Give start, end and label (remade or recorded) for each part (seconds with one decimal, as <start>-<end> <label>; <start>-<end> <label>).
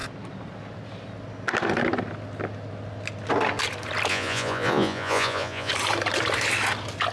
0.0-4.1 recorded; 4.1-5.7 remade; 5.7-7.1 recorded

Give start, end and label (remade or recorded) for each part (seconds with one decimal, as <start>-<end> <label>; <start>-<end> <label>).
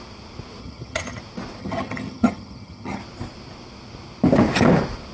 0.0-0.6 recorded; 0.6-1.2 remade; 1.2-1.6 recorded; 1.6-3.0 remade; 3.0-5.1 recorded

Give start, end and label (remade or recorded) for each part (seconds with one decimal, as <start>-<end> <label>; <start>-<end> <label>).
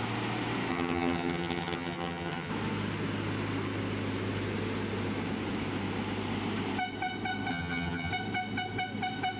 0.0-0.7 recorded; 0.7-2.5 remade; 2.5-7.5 recorded; 7.5-8.1 remade; 8.1-9.4 recorded